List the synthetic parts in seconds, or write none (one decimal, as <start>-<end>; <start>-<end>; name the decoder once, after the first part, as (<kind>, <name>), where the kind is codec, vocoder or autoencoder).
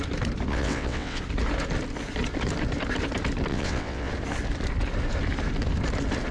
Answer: 0.5-1.2 (vocoder, WaveNeXt); 3.5-4.1